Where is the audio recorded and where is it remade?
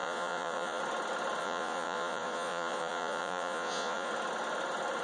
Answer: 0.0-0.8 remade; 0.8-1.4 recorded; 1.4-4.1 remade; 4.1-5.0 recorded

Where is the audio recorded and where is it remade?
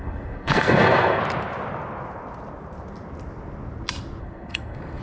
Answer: 0.0-1.2 remade; 1.2-4.2 recorded; 4.2-5.0 remade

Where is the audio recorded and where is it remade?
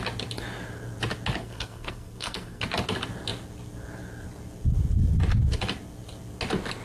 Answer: 0.0-1.4 recorded; 1.4-2.6 remade; 2.6-6.8 recorded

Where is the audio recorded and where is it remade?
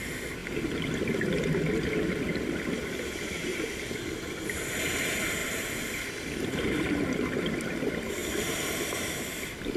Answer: 0.0-3.5 recorded; 3.5-4.8 remade; 4.8-8.2 recorded; 8.2-9.4 remade; 9.4-9.8 recorded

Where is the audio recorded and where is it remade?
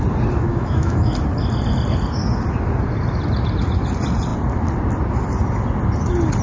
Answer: 0.0-0.5 recorded; 0.5-1.1 remade; 1.1-6.4 recorded